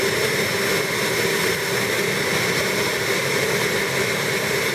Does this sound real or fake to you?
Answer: real